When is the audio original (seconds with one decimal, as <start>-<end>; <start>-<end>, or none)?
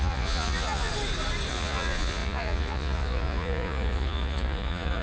0.9-1.5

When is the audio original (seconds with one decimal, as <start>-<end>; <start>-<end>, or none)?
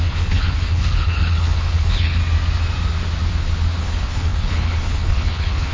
2.2-3.8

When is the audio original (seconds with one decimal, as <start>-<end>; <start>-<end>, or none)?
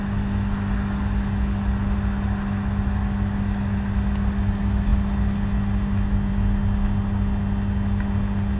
0.0-8.6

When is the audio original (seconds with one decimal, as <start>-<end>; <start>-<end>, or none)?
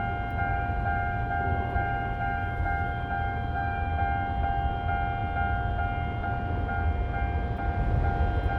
0.0-0.5; 3.9-8.6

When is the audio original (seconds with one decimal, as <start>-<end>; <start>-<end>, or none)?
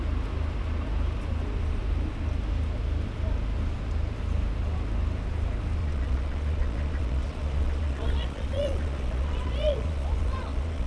0.0-5.8